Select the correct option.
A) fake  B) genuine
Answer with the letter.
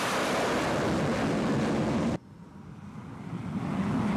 B